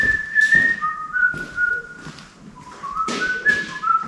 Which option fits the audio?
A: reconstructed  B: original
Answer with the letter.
B